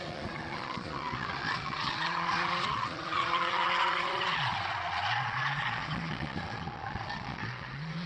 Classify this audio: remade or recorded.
remade